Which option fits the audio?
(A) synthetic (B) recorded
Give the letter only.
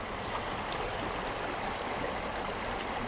B